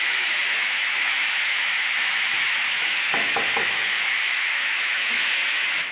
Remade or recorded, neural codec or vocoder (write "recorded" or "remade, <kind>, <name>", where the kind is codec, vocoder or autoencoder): remade, autoencoder, DAC-VAE